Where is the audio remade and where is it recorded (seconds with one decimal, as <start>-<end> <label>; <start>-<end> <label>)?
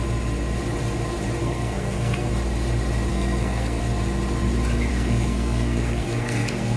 0.0-1.4 recorded; 1.4-2.3 remade; 2.3-3.1 recorded; 3.1-3.8 remade; 3.8-4.9 recorded; 4.9-6.8 remade